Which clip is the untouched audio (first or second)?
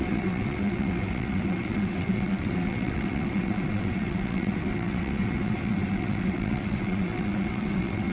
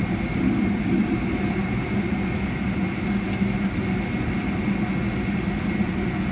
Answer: second